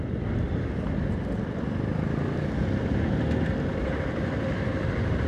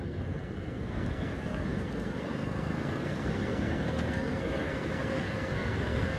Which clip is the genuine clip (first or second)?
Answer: first